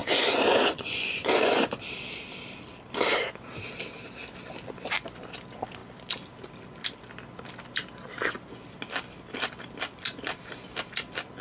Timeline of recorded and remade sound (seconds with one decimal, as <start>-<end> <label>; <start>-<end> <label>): 0.0-1.7 remade; 1.7-11.4 recorded